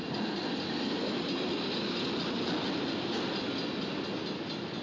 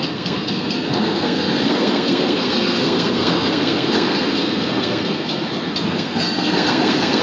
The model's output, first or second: second